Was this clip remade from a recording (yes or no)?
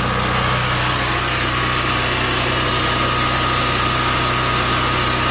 no